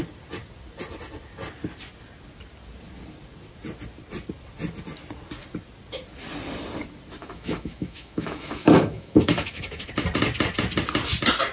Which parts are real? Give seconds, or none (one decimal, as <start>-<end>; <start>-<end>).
0.0-7.2; 9.9-11.5